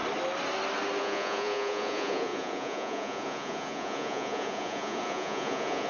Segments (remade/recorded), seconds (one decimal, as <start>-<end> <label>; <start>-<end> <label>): 0.0-1.0 recorded; 1.0-5.9 remade